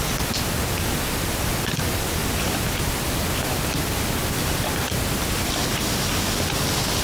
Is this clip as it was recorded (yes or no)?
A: yes